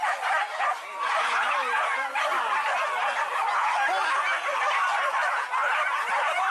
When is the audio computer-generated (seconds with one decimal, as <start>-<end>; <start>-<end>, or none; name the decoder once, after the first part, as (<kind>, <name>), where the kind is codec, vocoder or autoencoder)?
0.0-6.5 (vocoder, BigVGAN v2)